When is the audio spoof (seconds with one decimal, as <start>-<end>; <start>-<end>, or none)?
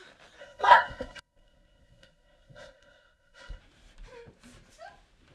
0.4-3.6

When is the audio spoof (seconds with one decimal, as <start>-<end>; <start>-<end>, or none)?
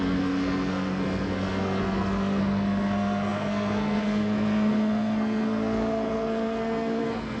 0.0-7.4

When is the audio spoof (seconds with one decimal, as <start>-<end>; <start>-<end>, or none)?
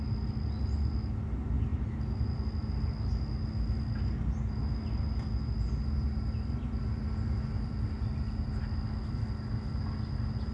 none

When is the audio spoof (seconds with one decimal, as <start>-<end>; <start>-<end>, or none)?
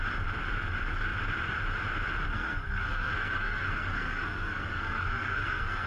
2.3-5.9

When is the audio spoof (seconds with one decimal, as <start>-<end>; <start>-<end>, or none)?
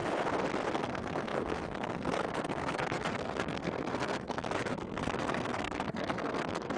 0.7-6.8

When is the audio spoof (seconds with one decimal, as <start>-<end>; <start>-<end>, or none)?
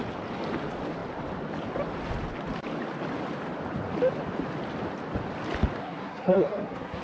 5.8-7.0